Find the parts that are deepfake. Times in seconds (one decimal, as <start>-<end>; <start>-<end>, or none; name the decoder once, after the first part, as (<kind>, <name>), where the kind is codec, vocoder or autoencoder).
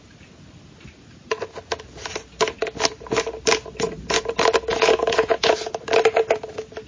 4.7-5.6 (vocoder, Vocos)